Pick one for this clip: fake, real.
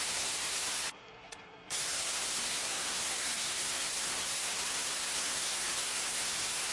fake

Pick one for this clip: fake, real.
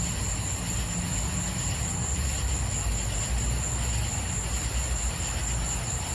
real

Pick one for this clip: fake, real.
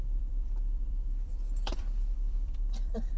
fake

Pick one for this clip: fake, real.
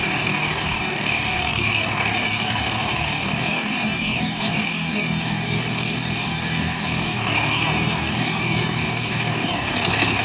fake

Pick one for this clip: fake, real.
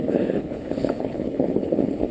fake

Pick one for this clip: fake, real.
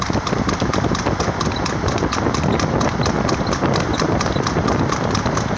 real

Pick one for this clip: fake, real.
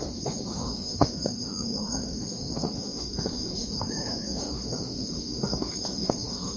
fake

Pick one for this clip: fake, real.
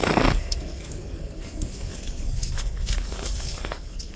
fake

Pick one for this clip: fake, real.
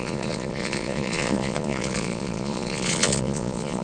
fake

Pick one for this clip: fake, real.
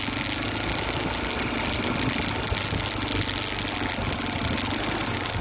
real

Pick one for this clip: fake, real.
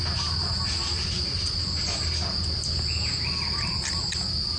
real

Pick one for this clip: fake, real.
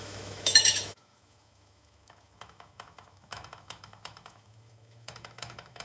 fake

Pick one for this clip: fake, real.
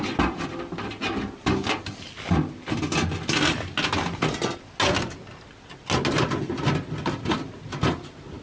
real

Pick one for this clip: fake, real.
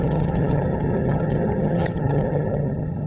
fake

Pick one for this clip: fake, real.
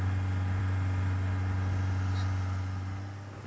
real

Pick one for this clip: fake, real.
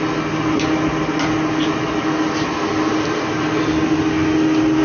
real